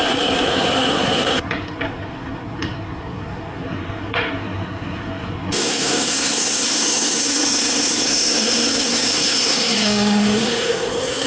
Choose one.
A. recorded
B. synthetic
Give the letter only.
B